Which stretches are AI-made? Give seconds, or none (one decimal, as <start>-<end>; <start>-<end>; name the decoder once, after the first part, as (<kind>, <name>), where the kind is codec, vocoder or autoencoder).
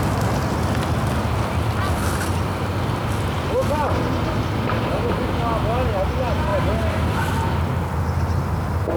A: none